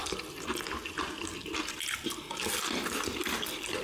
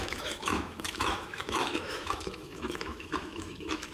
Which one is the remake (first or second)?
second